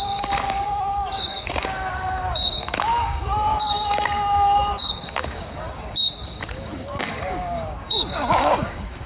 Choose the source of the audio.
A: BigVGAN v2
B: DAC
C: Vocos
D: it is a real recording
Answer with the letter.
B